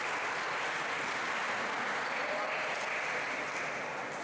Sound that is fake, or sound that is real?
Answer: real